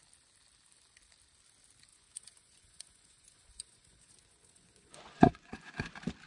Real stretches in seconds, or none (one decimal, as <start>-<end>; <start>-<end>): 0.0-1.9; 5.7-6.3